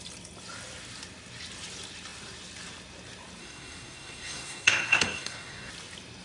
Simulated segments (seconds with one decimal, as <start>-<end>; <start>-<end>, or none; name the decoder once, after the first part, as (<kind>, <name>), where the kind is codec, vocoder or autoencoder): 3.4-5.7 (codec, SNAC)